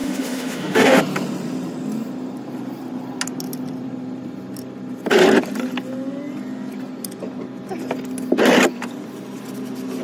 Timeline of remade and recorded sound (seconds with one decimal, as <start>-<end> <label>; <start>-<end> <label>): 0.0-1.0 remade; 1.0-10.0 recorded